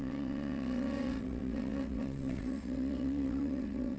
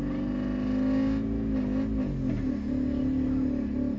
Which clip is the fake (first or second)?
first